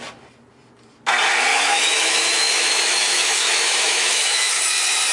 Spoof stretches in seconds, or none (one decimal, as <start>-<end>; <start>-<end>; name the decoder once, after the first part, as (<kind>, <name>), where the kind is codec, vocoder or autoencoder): 1.5-4.6 (autoencoder, DAC-VAE)